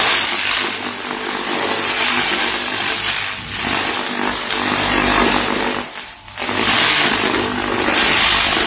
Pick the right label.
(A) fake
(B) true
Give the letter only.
B